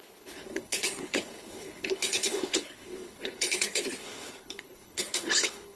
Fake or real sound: fake